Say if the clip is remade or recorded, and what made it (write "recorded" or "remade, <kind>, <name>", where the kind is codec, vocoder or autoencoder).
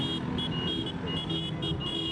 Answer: recorded